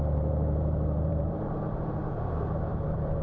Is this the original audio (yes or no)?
no